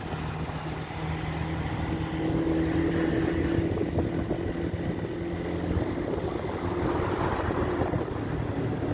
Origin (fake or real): real